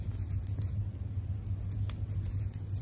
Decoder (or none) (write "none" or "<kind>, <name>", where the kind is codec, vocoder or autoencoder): none